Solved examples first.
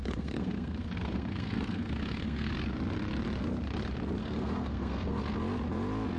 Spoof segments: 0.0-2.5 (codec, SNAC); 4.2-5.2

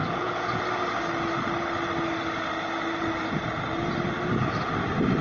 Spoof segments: 0.0-0.6 (vocoder, Vocos)

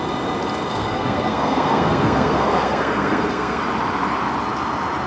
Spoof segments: 0.7-3.6 (codec, SNAC)

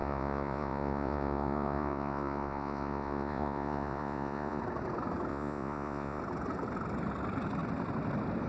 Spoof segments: 0.0-4.6 (vocoder, Vocos); 5.3-6.2